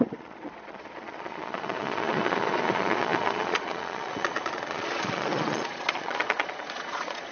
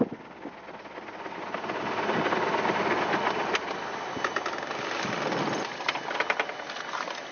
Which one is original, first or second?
second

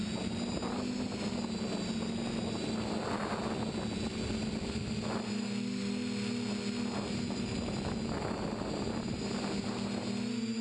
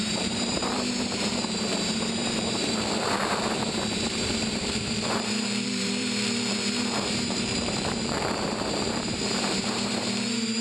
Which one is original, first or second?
first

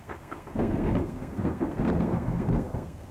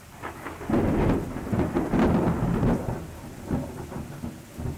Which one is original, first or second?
second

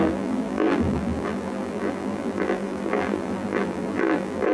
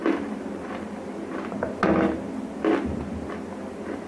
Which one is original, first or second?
second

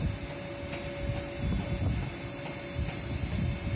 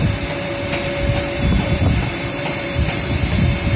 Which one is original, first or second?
first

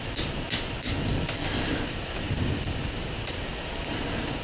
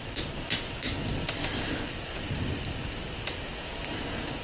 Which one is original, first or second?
second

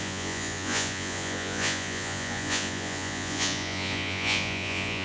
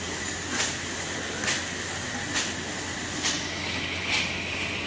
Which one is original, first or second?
second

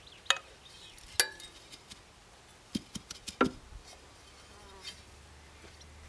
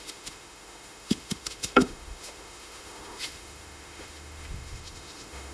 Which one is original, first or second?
first